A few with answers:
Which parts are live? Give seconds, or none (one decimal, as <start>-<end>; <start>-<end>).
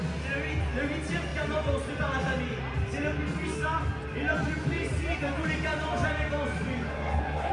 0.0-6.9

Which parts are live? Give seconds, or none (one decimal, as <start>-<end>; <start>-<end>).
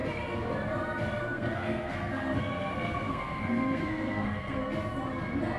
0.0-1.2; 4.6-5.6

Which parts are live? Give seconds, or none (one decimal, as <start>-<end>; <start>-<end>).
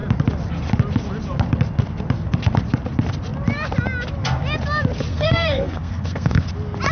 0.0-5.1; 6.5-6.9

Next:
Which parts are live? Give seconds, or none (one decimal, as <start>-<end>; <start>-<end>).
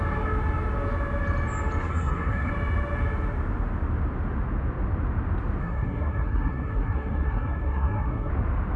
0.0-1.8; 2.5-5.6; 8.3-8.8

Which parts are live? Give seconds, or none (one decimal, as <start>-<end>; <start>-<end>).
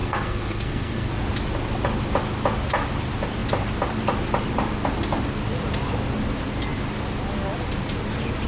1.1-8.5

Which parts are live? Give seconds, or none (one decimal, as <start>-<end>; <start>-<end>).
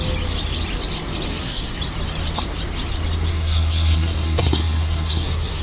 0.0-1.3; 1.8-3.3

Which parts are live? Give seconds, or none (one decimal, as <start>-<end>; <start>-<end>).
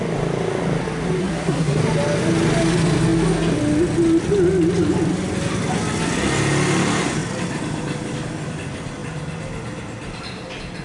0.0-1.2; 1.8-10.8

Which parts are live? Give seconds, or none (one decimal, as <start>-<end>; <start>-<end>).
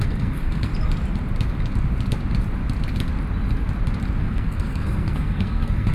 0.7-4.2